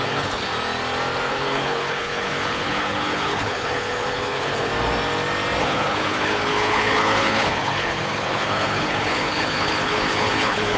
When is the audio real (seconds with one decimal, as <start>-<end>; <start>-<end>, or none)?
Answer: 0.5-1.3; 4.7-5.6